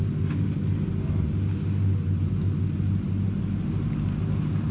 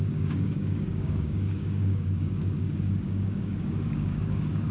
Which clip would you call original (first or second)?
first